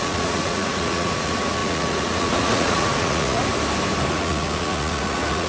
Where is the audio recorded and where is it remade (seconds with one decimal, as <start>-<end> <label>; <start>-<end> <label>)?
0.0-3.4 remade; 3.4-4.1 recorded; 4.1-5.5 remade